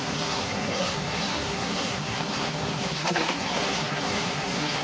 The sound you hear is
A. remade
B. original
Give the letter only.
A